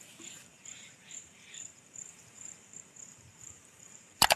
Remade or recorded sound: remade